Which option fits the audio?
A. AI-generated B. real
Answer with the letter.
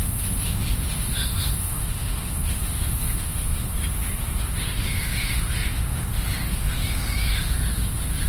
A